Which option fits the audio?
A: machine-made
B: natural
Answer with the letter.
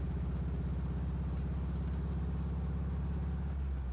B